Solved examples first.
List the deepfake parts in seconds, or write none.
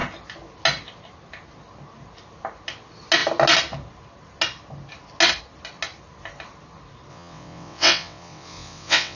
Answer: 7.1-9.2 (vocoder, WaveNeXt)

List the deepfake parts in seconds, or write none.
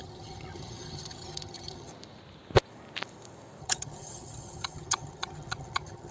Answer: 0.0-1.9 (vocoder, HiFi-GAN); 3.6-6.1